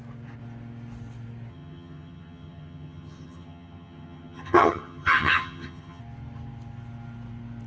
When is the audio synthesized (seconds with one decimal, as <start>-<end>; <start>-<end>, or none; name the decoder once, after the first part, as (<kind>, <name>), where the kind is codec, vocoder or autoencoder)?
1.5-6.0 (vocoder, HiFi-GAN)